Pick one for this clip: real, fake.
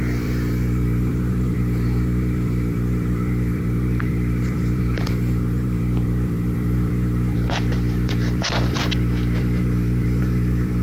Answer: fake